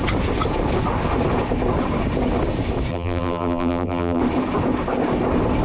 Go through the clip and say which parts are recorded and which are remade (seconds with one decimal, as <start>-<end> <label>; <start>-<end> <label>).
0.0-2.9 recorded; 2.9-4.2 remade; 4.2-5.6 recorded